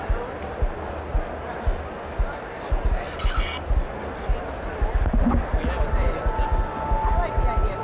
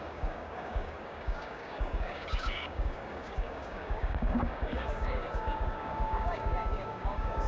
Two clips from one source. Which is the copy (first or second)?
second